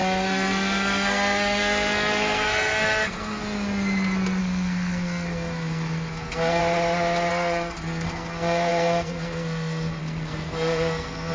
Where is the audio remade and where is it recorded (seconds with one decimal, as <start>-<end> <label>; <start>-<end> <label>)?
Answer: 0.0-3.4 remade; 3.4-4.4 recorded; 4.4-6.6 remade; 6.6-7.3 recorded; 7.3-11.3 remade